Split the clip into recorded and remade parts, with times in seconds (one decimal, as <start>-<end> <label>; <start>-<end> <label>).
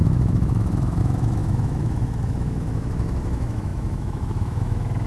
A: 0.0-5.1 remade